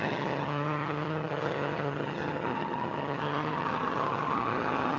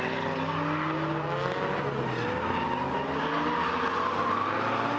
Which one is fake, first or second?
first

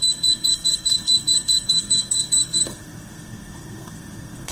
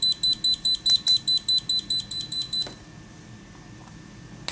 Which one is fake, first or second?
first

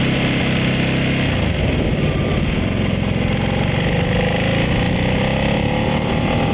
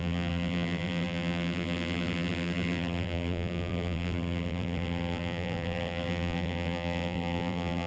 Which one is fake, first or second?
second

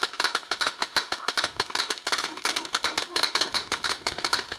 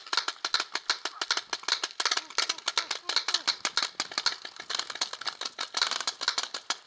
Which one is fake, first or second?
first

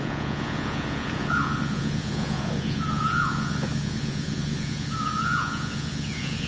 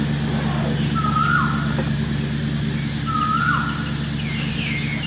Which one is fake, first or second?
first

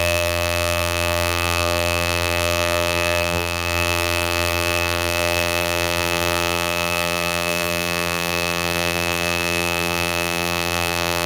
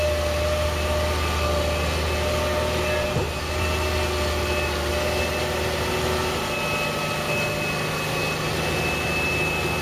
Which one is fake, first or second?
first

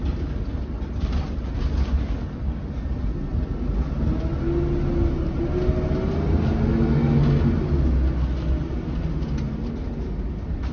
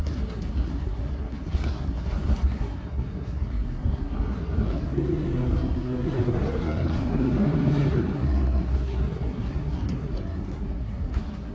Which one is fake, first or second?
second